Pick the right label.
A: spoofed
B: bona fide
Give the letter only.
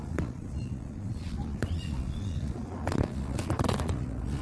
A